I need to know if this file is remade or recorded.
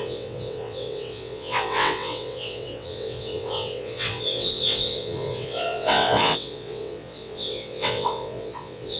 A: remade